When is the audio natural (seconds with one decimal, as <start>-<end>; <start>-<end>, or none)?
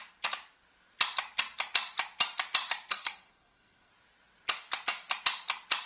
0.0-2.9; 3.9-5.9